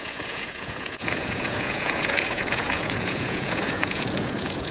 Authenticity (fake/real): fake